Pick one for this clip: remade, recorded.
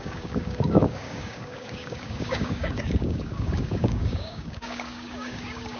remade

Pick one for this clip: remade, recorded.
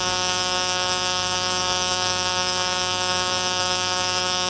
remade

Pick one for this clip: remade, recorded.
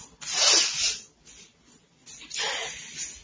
recorded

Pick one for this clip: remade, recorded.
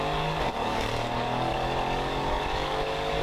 remade